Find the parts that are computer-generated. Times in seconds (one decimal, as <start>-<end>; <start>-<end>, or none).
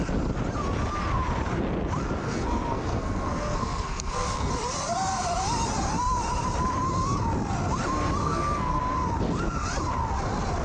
2.2-4.5; 8.2-8.8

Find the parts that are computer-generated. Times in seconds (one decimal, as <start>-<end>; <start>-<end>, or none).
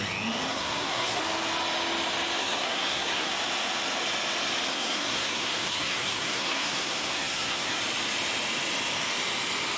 0.5-1.2; 2.4-3.3; 4.7-7.8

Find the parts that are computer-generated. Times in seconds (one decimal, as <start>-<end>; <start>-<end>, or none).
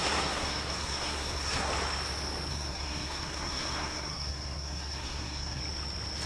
0.0-1.7; 2.5-5.6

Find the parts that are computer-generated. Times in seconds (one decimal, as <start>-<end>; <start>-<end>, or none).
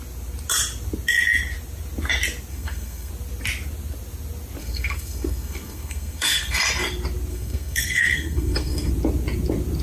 2.5-3.1; 4.6-6.6; 7.3-8.9